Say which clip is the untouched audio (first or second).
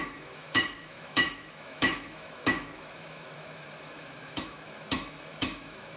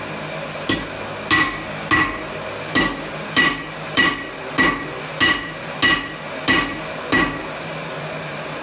second